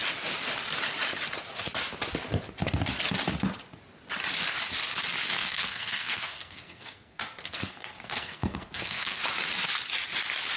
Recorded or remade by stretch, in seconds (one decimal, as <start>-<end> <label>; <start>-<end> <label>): 0.0-5.3 recorded; 5.3-9.2 remade; 9.2-10.6 recorded